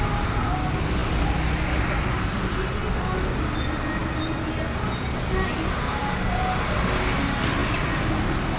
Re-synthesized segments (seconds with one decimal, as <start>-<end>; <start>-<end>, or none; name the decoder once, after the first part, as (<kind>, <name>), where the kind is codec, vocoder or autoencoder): none